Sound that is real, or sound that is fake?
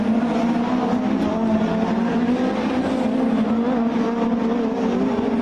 real